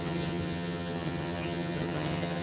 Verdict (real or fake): fake